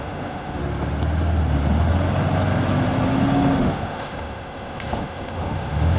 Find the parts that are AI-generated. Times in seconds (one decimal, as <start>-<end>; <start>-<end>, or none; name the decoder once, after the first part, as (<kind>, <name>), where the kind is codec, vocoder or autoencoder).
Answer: 0.0-0.6 (autoencoder, DAC-VAE); 3.6-6.0